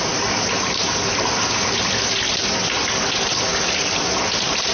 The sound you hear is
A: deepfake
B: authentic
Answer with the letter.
B